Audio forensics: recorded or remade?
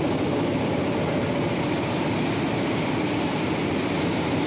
recorded